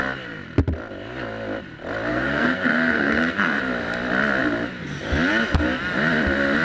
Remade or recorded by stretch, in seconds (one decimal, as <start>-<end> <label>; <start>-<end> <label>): 0.0-2.1 recorded; 2.1-3.6 remade; 3.6-6.6 recorded